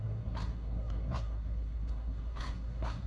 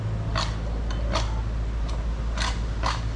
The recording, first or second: second